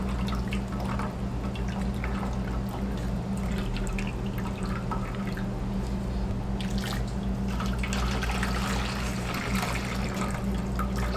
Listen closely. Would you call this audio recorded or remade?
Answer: recorded